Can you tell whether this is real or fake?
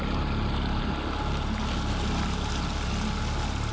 real